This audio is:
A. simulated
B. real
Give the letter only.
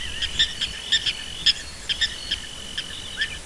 B